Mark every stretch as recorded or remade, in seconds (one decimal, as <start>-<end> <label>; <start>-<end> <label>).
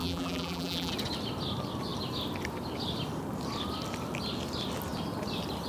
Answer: 0.0-0.9 remade; 0.9-5.7 recorded